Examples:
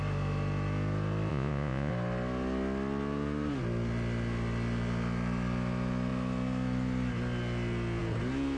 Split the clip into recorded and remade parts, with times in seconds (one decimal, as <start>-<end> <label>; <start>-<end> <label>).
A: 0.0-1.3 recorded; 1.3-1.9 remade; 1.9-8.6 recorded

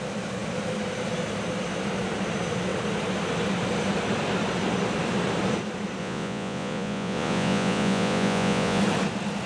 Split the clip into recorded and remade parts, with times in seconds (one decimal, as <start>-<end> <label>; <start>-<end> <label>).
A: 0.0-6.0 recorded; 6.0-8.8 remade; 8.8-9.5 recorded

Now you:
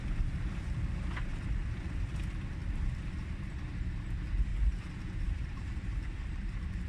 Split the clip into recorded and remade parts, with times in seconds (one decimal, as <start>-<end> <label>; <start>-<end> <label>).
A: 0.0-4.5 recorded; 4.5-6.9 remade

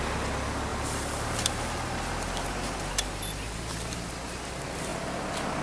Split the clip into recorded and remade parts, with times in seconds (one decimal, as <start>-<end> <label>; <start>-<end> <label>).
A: 0.0-0.7 recorded; 0.7-4.1 remade; 4.1-5.6 recorded

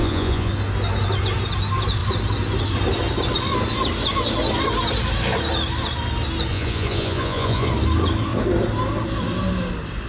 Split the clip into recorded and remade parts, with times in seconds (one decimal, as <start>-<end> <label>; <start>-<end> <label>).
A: 0.0-0.5 remade; 0.5-6.5 recorded; 6.5-7.7 remade; 7.7-10.1 recorded